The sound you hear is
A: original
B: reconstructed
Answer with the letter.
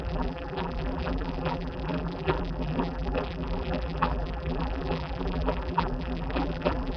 B